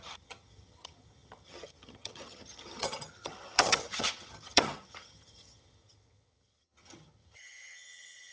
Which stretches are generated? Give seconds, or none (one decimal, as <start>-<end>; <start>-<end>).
0.0-8.3